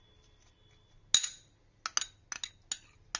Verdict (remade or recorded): recorded